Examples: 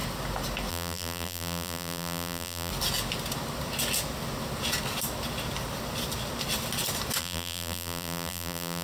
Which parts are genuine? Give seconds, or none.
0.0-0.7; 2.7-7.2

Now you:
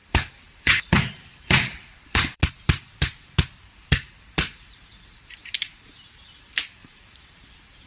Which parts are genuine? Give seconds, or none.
none

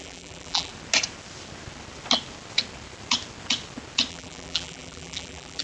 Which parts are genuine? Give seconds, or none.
0.7-4.1

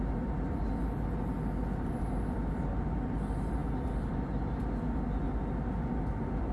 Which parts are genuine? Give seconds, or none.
0.0-6.5